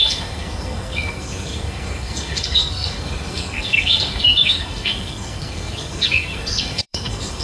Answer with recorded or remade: remade